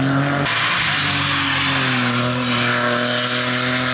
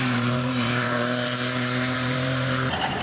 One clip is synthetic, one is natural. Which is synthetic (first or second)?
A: second